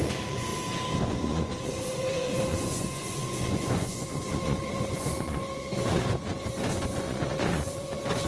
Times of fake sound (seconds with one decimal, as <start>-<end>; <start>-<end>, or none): 0.0-0.5; 1.1-8.3